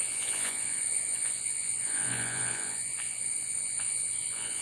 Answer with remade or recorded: remade